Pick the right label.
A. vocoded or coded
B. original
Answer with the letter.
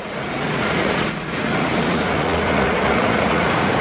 A